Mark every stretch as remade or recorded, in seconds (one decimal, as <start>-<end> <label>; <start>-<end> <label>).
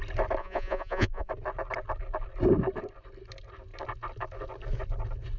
0.0-0.4 recorded; 0.4-1.3 remade; 1.3-5.4 recorded